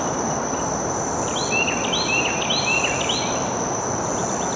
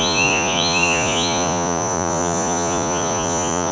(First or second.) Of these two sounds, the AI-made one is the second